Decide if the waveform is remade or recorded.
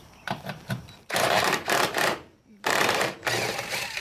remade